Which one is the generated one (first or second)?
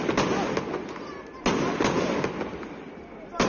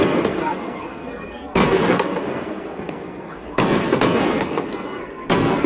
second